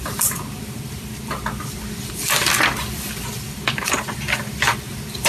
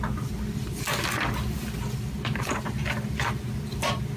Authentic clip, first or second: second